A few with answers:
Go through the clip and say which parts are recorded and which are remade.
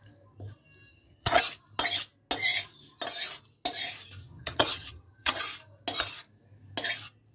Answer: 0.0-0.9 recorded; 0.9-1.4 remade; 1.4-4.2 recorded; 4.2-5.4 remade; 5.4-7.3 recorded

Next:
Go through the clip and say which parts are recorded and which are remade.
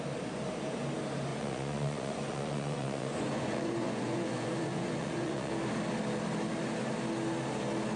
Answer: 0.0-1.3 recorded; 1.3-5.5 remade; 5.5-8.0 recorded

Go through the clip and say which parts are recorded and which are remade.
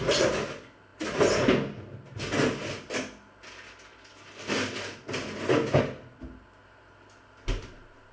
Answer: 0.0-8.1 recorded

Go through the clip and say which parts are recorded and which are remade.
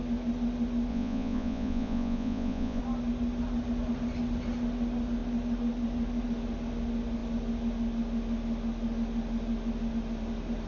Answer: 0.0-0.9 recorded; 0.9-2.8 remade; 2.8-10.7 recorded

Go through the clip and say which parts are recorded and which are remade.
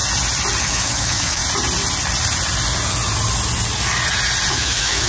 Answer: 0.0-0.6 recorded; 0.6-1.4 remade; 1.4-4.5 recorded; 4.5-5.1 remade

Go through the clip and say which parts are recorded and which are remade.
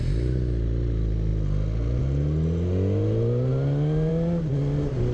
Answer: 0.0-5.1 recorded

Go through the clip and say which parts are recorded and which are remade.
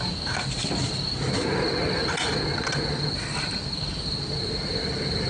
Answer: 0.0-5.3 recorded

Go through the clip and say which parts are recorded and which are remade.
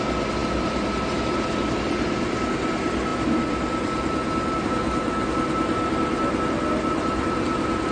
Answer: 0.0-7.9 recorded